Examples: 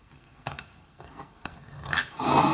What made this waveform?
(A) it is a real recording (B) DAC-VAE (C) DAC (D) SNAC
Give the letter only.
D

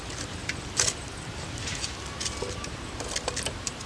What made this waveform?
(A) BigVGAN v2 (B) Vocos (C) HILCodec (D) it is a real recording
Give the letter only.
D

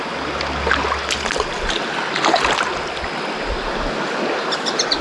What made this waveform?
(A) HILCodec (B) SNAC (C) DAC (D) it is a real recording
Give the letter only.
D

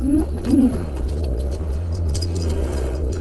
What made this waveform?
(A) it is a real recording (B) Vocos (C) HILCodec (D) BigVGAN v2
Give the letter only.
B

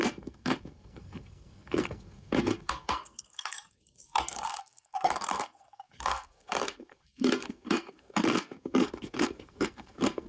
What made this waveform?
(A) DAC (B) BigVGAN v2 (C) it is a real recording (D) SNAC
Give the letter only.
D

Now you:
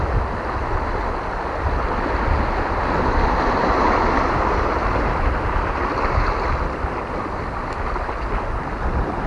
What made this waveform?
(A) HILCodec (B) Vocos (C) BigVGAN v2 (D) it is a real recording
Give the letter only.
D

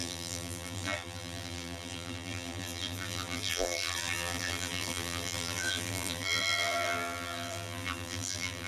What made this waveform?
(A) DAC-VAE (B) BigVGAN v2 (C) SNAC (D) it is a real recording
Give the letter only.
B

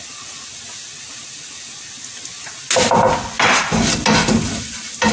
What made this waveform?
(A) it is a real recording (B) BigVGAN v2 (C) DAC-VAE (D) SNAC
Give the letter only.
A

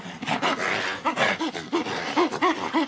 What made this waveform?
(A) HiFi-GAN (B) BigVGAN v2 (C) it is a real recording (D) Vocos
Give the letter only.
C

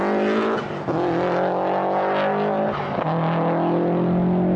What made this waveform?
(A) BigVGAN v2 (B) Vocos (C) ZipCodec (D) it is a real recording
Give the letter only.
D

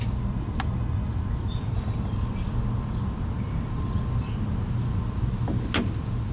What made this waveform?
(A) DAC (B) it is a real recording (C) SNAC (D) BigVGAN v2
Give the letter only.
B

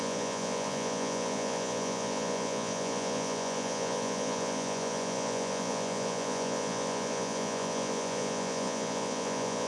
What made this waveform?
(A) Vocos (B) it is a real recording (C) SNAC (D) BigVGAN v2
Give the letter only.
A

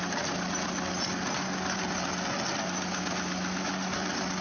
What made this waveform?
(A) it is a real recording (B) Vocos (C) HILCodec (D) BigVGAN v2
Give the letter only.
A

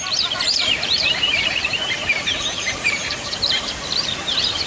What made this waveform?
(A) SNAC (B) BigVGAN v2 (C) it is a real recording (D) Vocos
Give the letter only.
B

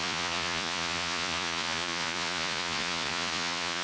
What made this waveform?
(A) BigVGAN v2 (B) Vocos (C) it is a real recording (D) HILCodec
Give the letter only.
B